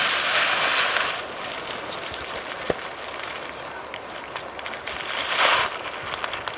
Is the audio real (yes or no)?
yes